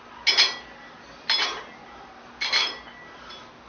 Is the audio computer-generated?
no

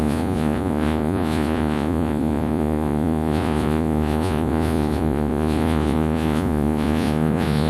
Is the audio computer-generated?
yes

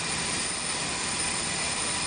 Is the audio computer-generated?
no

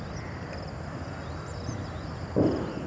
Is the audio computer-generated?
no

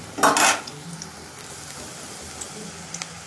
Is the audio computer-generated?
no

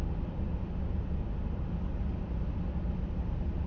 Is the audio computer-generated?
no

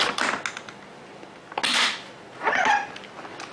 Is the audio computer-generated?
no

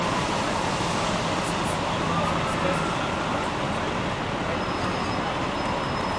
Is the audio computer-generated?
no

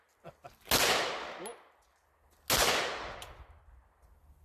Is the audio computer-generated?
no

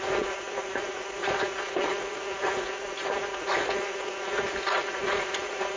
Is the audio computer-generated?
yes